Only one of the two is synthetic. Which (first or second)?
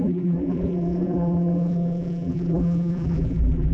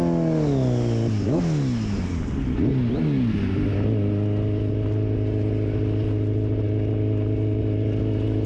first